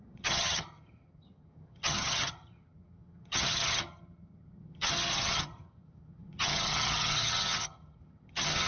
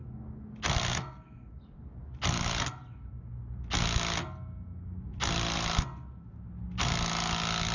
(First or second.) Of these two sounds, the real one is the second